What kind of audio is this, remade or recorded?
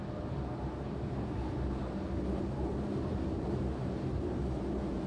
recorded